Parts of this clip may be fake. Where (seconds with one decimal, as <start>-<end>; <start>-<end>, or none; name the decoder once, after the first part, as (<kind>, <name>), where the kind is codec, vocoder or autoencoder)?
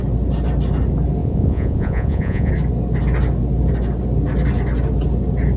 1.2-2.5 (vocoder, Vocos)